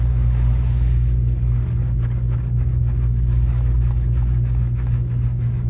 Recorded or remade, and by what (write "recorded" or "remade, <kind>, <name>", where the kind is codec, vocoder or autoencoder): remade, codec, DAC